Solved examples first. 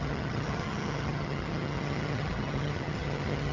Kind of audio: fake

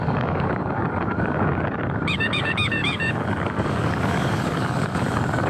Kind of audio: fake